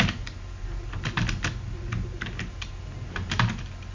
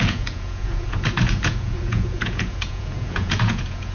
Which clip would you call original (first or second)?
first